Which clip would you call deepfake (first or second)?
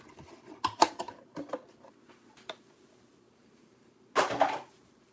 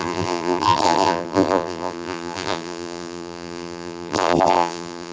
second